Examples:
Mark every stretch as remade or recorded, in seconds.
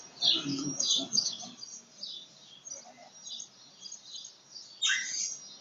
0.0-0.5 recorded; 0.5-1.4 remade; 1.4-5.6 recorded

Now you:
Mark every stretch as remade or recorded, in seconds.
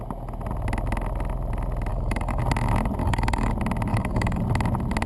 0.0-1.9 recorded; 1.9-2.4 remade; 2.4-3.0 recorded; 3.0-3.5 remade; 3.5-3.9 recorded; 3.9-4.4 remade; 4.4-5.1 recorded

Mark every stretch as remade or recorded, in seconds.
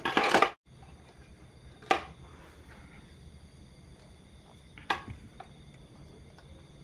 0.0-6.8 recorded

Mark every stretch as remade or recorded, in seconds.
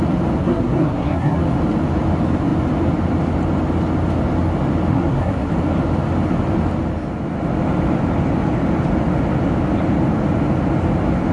0.0-0.4 recorded; 0.4-1.4 remade; 1.4-4.9 recorded; 4.9-5.5 remade; 5.5-11.3 recorded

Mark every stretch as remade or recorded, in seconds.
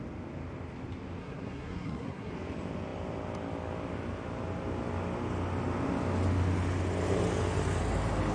0.0-1.2 recorded; 1.2-2.3 remade; 2.3-8.3 recorded